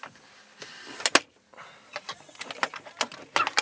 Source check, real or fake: real